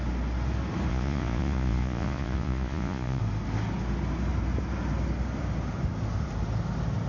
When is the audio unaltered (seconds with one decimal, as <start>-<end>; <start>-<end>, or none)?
0.0-0.9; 3.2-7.1